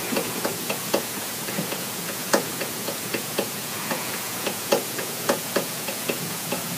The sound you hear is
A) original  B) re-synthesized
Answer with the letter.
B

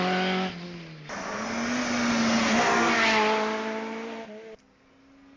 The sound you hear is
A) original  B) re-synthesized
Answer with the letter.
A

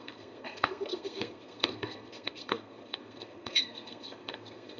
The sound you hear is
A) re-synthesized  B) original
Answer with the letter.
A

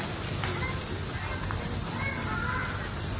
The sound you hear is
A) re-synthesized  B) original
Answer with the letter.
B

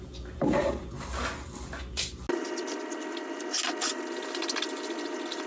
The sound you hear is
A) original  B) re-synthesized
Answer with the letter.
A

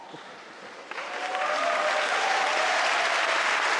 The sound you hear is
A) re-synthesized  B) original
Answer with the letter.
B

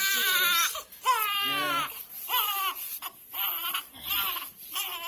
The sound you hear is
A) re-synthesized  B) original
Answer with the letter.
B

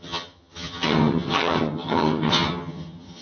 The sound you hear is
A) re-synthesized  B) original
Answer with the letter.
A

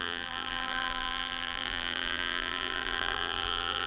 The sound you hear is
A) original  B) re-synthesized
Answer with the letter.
B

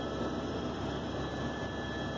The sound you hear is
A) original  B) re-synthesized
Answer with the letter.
A